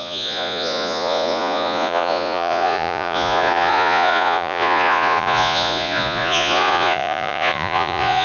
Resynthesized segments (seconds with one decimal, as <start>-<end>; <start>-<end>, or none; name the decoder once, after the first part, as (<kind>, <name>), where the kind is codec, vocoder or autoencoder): 0.0-8.2 (vocoder, Vocos)